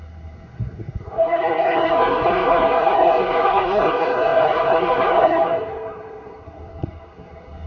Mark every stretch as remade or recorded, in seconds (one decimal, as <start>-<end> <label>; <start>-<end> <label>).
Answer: 0.0-7.7 remade